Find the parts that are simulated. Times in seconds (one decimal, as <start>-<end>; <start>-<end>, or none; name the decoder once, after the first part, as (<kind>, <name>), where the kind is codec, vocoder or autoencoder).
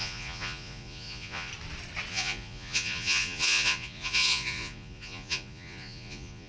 0.0-1.5 (vocoder, Vocos); 2.1-6.5